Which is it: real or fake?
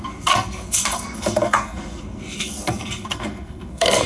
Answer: fake